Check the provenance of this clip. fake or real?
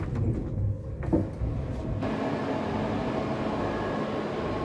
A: real